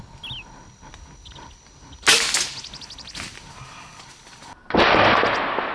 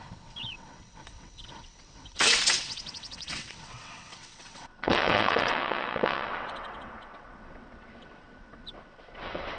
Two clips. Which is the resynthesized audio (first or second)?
second